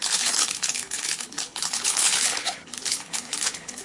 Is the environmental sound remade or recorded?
remade